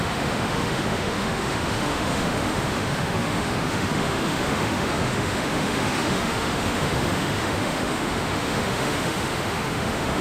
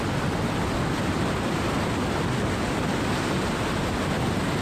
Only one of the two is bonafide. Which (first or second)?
second